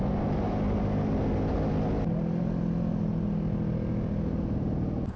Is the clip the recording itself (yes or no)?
yes